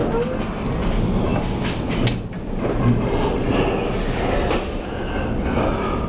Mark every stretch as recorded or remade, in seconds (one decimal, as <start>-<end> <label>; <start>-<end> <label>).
0.0-6.1 recorded

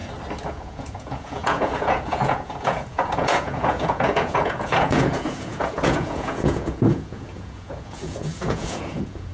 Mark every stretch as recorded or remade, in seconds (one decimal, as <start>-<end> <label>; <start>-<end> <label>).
0.0-0.5 recorded; 0.5-9.3 remade

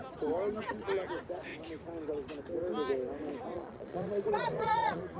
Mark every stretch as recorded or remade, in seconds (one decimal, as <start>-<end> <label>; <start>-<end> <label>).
0.0-3.5 recorded; 3.5-5.2 remade

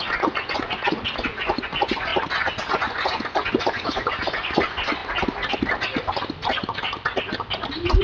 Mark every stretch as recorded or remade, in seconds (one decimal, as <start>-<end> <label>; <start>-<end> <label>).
0.0-2.1 remade; 2.1-2.7 recorded; 2.7-5.0 remade; 5.0-8.0 recorded

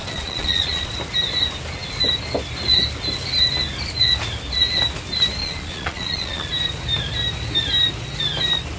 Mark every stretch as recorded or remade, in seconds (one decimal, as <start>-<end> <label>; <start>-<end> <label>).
0.0-0.9 remade; 0.9-5.4 recorded; 5.4-6.5 remade; 6.5-8.8 recorded

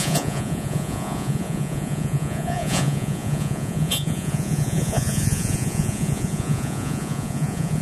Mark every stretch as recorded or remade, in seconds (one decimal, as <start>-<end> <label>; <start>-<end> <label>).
0.0-7.8 remade

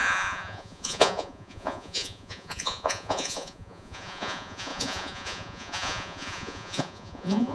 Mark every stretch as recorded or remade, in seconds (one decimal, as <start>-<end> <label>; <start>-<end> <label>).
0.0-7.5 remade

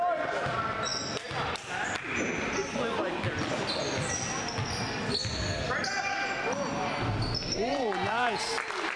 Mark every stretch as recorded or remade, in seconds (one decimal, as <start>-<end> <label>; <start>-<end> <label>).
0.0-7.7 recorded; 7.7-8.4 remade; 8.4-9.0 recorded